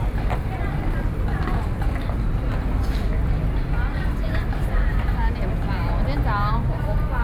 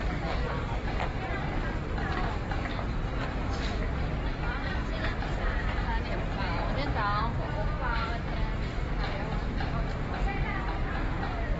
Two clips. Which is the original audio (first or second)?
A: first